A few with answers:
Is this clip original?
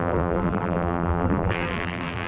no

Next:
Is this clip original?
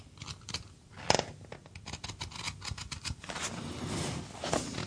yes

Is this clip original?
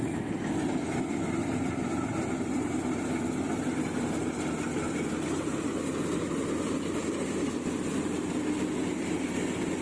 yes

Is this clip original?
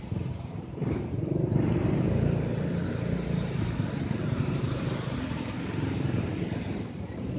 no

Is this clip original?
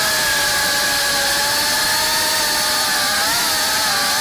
yes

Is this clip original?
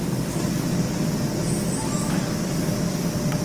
yes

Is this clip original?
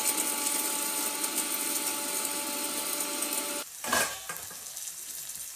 yes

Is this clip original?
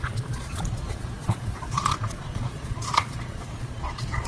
no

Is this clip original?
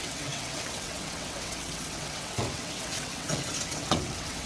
no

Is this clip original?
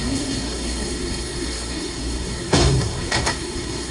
no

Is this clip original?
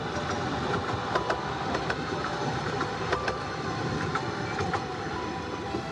yes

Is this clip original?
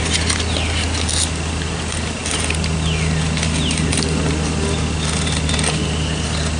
yes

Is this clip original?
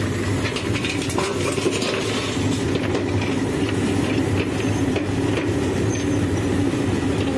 yes